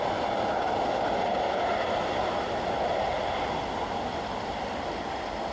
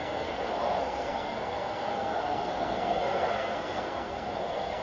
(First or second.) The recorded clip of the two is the first